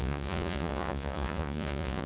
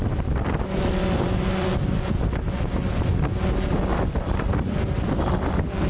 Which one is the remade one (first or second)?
first